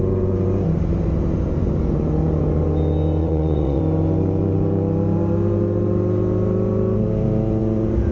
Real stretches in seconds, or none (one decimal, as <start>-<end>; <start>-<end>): 0.0-3.2; 3.8-8.1